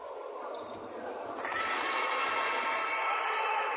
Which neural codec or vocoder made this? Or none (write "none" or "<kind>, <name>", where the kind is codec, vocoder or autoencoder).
none